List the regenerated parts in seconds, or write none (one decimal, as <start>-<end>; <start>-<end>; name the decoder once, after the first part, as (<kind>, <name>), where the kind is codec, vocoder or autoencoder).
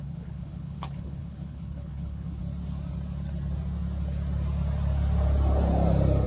0.0-2.4 (codec, HILCodec)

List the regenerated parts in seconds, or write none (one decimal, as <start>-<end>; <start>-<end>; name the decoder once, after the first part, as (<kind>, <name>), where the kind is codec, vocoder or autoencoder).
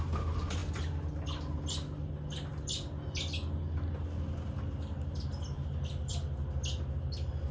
none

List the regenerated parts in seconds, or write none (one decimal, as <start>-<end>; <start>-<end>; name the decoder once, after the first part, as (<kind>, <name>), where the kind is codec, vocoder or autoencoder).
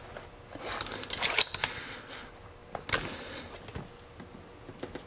none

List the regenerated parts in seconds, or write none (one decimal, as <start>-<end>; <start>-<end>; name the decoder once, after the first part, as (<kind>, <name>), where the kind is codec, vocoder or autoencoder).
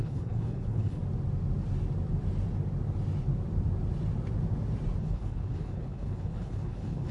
0.0-1.0 (codec, HILCodec); 5.0-7.1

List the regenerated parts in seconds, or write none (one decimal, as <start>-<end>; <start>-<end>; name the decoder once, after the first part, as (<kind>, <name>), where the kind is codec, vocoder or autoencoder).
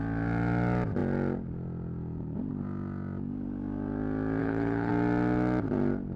4.4-4.9 (codec, HILCodec)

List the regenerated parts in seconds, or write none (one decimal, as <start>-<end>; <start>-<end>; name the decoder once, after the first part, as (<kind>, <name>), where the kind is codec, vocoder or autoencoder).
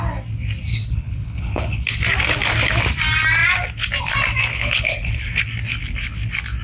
0.7-2.0 (codec, HILCodec); 4.5-5.4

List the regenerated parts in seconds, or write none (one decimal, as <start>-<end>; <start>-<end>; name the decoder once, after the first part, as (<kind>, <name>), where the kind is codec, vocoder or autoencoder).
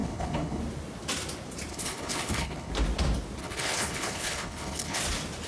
0.0-0.6 (codec, HILCodec); 1.7-2.7; 3.4-5.0